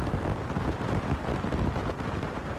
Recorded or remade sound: remade